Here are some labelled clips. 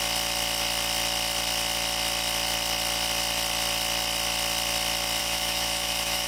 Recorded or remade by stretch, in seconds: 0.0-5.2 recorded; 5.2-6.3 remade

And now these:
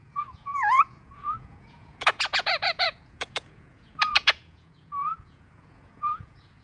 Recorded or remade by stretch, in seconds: 0.0-6.6 remade

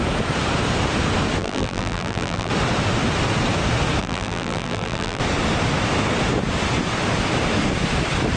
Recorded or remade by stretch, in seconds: 0.0-1.4 recorded; 1.4-2.5 remade; 2.5-4.0 recorded; 4.0-5.2 remade; 5.2-8.4 recorded